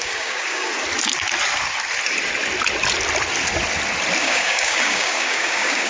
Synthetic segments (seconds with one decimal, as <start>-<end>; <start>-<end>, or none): 0.0-0.7; 4.2-5.9